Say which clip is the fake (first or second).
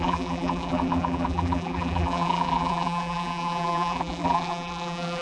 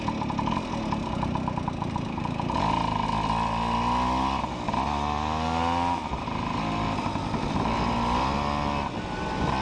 first